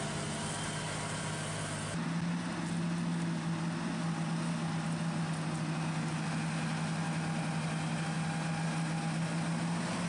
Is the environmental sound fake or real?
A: real